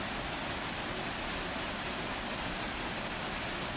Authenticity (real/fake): real